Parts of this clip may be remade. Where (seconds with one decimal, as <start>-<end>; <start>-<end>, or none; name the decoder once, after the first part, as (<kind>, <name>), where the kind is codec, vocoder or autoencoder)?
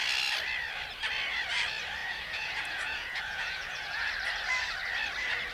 2.0-4.1 (vocoder, Vocos)